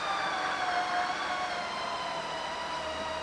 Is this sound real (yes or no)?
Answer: yes